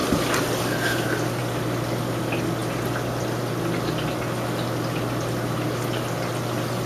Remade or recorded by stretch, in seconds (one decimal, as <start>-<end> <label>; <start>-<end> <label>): 0.0-6.9 recorded